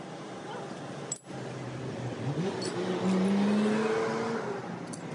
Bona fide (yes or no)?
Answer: yes